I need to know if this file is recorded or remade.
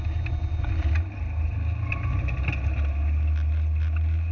recorded